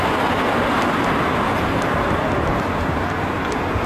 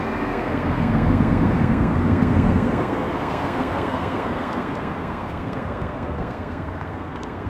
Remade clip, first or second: second